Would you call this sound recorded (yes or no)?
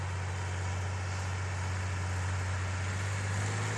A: yes